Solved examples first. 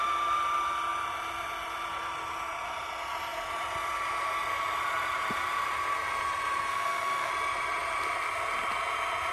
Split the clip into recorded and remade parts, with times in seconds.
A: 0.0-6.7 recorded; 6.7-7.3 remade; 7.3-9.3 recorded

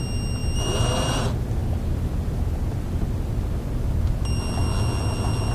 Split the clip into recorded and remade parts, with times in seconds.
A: 0.0-5.5 recorded